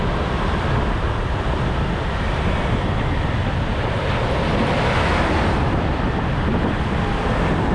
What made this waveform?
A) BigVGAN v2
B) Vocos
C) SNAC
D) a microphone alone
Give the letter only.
A